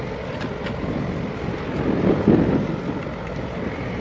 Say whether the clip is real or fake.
real